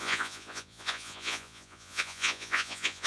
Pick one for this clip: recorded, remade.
remade